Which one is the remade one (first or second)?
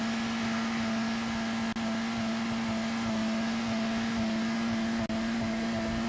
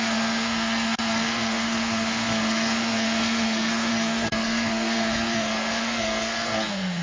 second